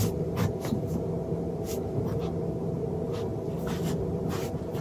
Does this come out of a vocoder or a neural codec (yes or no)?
no